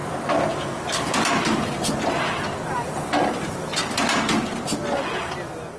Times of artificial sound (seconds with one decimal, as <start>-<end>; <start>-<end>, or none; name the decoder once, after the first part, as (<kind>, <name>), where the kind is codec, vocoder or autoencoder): none